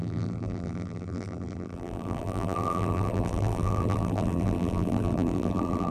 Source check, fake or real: fake